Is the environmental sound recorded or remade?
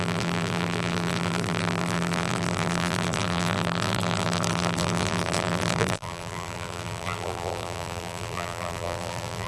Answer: remade